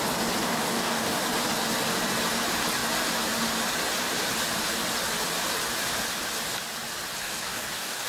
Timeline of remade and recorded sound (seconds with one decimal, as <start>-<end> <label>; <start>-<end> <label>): 0.0-0.4 recorded; 0.4-1.2 remade; 1.2-7.2 recorded; 7.2-8.1 remade